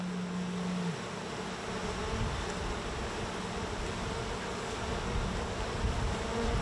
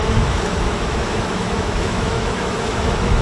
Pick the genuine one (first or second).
first